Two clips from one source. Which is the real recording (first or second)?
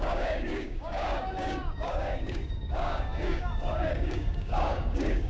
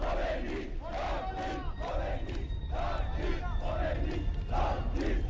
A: second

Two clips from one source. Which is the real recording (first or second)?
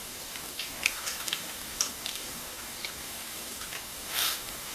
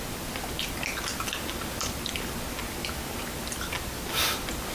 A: second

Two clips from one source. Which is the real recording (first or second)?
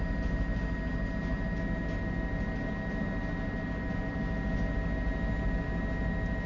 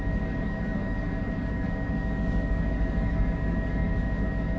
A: first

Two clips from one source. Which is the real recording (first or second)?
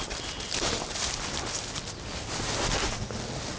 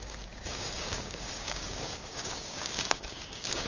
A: first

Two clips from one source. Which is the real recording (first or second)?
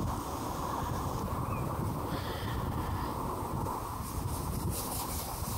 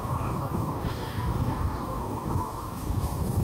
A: first